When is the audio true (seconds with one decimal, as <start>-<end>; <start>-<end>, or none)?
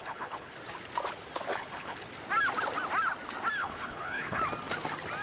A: 0.5-1.5; 2.1-3.6; 4.4-5.2